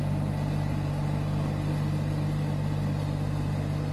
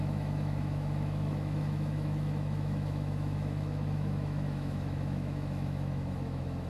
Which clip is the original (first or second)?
first